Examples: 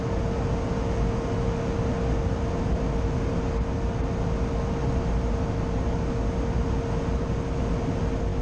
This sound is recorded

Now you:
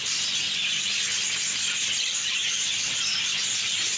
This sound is remade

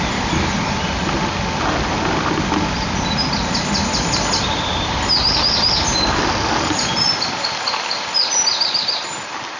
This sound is recorded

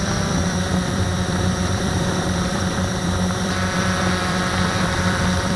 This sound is remade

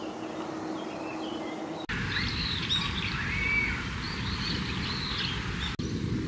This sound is recorded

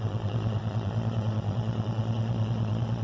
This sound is remade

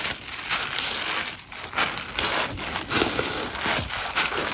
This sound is recorded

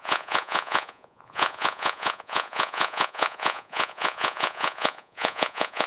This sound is remade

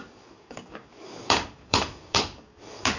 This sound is remade